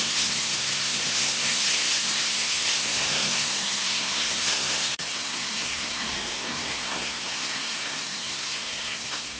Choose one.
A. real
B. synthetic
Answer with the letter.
B